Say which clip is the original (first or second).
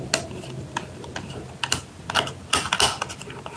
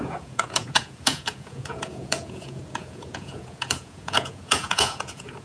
first